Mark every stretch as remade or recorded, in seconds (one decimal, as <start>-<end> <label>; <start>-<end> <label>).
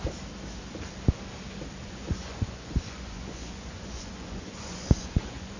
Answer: 0.0-1.8 recorded; 1.8-5.6 remade